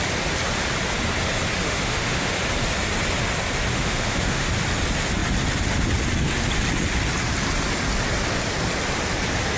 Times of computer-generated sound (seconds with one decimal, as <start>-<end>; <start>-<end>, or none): 1.6-2.4; 3.7-4.5